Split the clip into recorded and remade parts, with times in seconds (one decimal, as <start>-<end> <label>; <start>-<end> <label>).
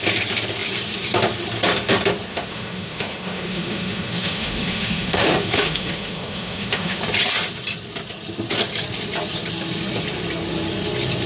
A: 0.0-2.3 recorded; 2.3-7.0 remade; 7.0-11.3 recorded